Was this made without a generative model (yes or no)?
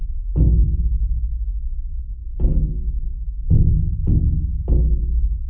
no